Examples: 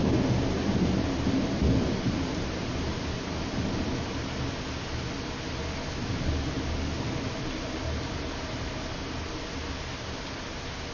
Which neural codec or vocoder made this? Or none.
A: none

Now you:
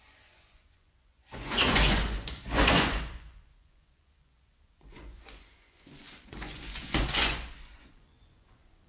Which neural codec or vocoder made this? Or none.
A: vocoder, Vocos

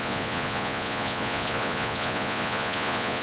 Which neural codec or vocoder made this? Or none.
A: vocoder, Vocos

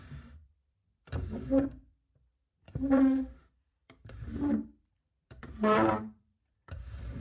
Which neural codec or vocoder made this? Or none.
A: vocoder, BigVGAN v2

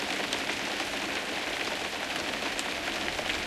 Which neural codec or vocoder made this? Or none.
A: none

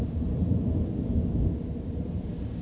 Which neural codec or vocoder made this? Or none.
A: none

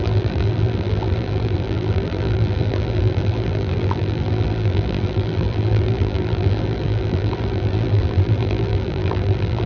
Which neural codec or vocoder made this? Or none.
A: vocoder, BigVGAN v2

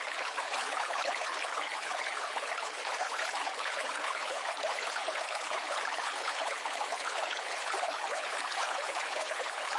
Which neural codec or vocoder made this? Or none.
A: codec, HILCodec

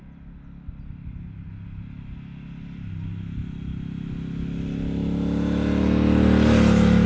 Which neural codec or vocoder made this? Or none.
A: none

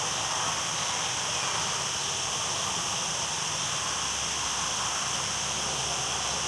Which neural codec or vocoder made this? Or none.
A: none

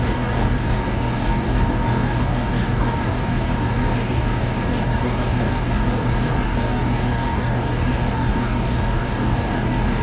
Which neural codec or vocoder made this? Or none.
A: codec, DAC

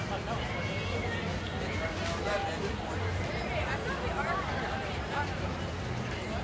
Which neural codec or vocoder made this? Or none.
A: none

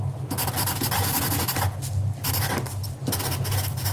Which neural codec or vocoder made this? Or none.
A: none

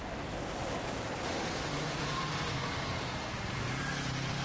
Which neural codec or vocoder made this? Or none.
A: vocoder, BigVGAN v2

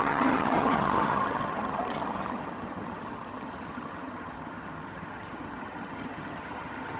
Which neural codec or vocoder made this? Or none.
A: vocoder, HiFi-GAN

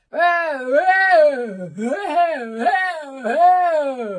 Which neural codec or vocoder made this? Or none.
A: none